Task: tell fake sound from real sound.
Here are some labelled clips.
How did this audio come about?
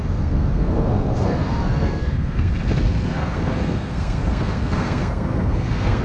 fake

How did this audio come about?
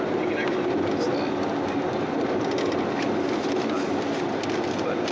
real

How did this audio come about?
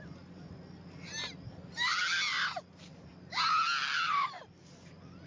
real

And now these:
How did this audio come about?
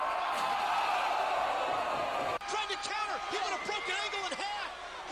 real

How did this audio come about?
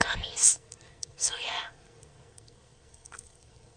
fake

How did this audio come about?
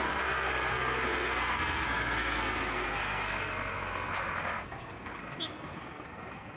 fake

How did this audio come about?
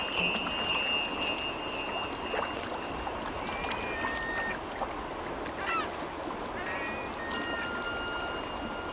real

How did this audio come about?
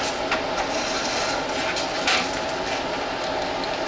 real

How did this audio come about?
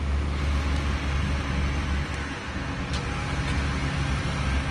real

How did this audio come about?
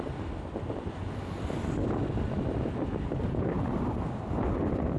real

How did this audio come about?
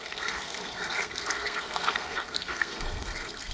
fake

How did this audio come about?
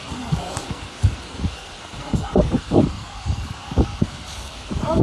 fake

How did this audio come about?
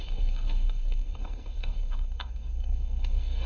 fake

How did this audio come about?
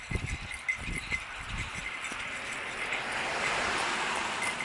real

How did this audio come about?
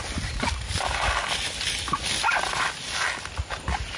real